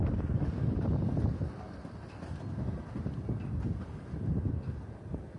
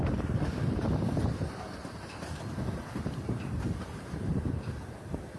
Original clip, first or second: first